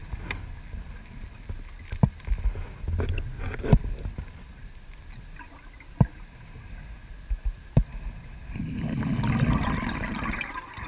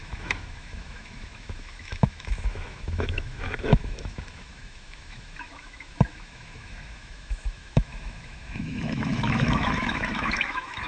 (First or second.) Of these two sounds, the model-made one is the second